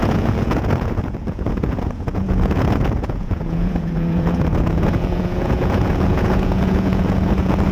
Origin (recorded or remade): remade